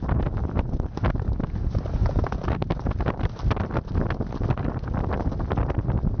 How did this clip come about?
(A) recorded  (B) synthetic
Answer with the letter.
A